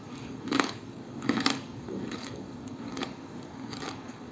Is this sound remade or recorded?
remade